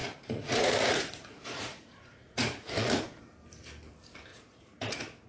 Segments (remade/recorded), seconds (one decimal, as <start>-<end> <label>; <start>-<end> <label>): 0.0-3.2 remade; 3.2-4.3 recorded; 4.3-5.3 remade